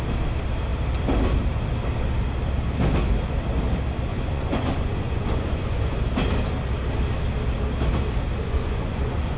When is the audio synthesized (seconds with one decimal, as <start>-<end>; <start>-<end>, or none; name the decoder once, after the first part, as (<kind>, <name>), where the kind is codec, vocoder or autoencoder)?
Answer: 4.1-6.0 (vocoder, Vocos); 8.4-9.4